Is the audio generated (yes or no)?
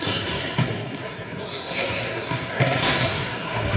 yes